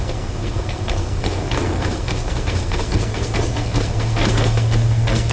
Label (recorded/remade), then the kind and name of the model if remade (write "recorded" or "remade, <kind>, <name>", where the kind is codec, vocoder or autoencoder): remade, codec, SNAC